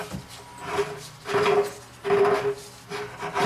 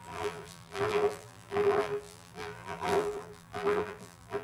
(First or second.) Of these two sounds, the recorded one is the first